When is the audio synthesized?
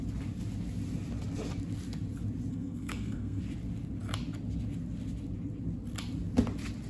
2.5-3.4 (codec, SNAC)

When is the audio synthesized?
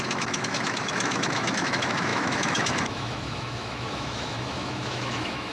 0.0-5.5 (autoencoder, DAC-VAE)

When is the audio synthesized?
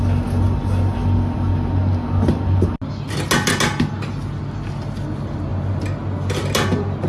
none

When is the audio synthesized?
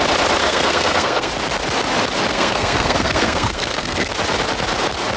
0.4-1.3 (codec, SNAC); 2.3-4.1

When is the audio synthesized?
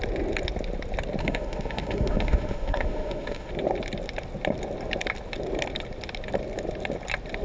1.2-3.5 (autoencoder, DAC-VAE)